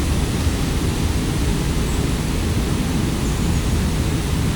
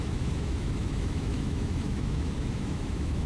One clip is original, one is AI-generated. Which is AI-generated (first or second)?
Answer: second